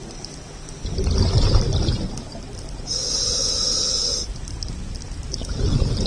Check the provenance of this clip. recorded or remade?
recorded